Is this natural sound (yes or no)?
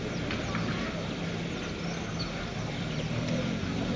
yes